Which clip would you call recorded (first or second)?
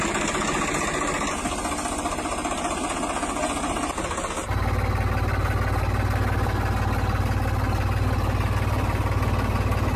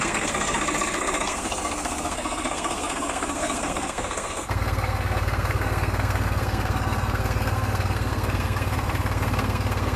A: first